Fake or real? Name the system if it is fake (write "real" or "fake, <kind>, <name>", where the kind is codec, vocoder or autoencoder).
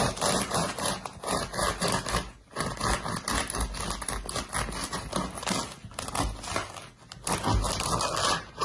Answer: real